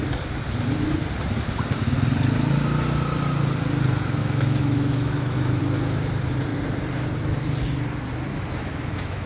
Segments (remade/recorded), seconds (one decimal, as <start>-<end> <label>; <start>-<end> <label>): 0.0-4.2 recorded; 4.2-5.6 remade; 5.6-8.3 recorded; 8.3-9.3 remade